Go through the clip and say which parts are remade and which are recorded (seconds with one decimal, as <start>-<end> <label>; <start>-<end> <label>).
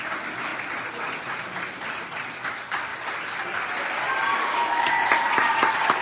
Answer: 0.0-4.3 recorded; 4.3-5.1 remade; 5.1-6.0 recorded